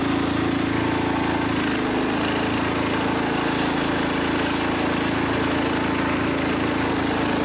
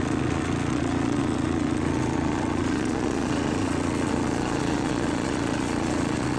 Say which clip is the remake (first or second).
second